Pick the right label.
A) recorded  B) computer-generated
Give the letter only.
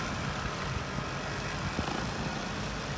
A